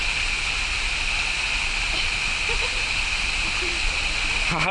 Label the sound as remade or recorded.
recorded